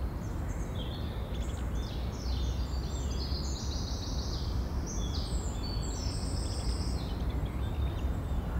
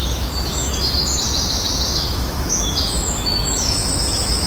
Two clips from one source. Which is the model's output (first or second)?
second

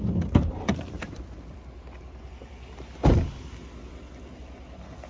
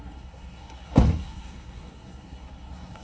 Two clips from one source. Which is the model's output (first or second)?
second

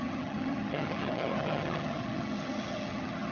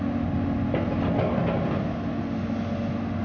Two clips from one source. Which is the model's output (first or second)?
first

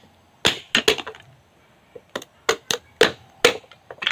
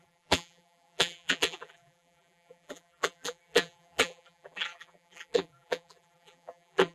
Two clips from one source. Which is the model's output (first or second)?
second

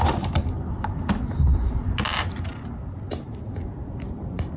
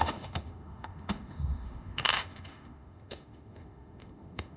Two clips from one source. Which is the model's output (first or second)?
second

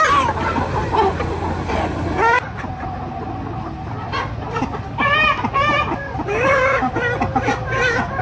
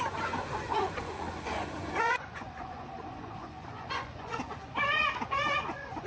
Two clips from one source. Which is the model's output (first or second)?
second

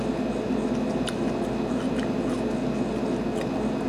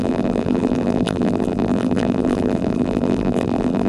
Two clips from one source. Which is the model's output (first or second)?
second